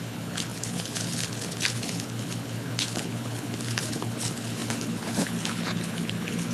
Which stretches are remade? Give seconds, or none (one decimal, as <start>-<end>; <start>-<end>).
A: 0.0-6.5